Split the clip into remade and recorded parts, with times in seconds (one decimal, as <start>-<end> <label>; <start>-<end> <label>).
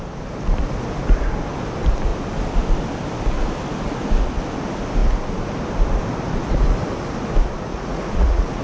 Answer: 0.0-7.7 recorded; 7.7-8.6 remade